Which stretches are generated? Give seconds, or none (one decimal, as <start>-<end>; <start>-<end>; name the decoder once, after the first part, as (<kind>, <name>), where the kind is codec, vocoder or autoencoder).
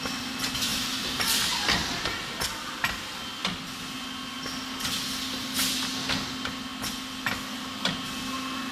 none